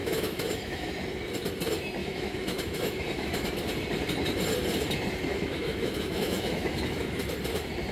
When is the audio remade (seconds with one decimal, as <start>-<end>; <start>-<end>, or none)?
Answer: 0.0-0.9; 2.0-3.5; 5.3-7.2